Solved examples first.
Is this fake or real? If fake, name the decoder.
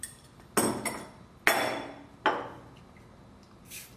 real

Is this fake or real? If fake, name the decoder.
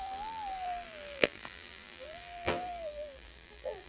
fake, vocoder, BigVGAN v2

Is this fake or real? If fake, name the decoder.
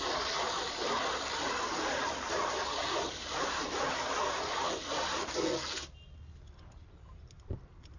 real